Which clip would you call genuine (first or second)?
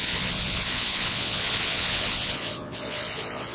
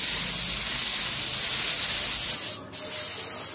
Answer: second